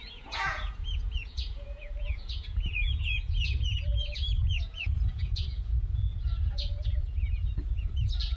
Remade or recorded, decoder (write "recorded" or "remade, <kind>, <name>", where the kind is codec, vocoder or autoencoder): remade, vocoder, Vocos